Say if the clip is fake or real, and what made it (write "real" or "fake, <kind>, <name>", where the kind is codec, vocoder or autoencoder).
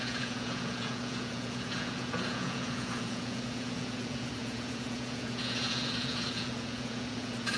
fake, vocoder, Vocos